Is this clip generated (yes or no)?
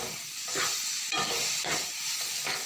no